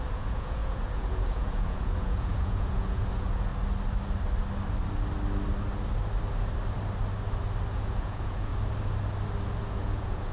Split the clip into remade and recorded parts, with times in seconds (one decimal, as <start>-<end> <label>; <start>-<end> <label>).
0.0-3.5 remade; 3.5-7.7 recorded; 7.7-8.5 remade; 8.5-9.6 recorded; 9.6-10.3 remade